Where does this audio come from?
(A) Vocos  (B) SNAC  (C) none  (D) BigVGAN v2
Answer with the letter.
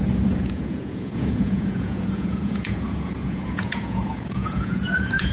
A